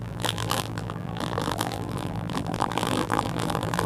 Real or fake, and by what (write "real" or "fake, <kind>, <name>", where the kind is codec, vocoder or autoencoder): fake, vocoder, BigVGAN v2